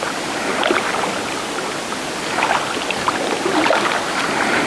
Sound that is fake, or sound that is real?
real